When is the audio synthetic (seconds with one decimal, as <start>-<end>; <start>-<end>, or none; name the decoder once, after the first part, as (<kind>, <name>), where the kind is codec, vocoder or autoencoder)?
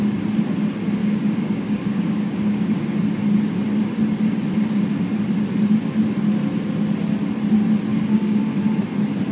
1.0-3.0 (codec, DAC); 7.9-8.6